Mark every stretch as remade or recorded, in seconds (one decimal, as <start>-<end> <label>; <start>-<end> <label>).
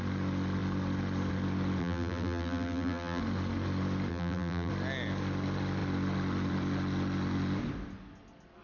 0.0-1.8 recorded; 1.8-3.2 remade; 3.2-4.1 recorded; 4.1-4.7 remade; 4.7-8.6 recorded